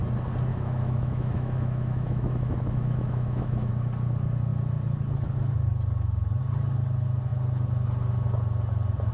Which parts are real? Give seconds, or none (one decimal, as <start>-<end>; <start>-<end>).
0.0-0.5; 3.7-9.1